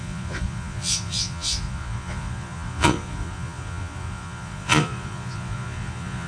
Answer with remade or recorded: remade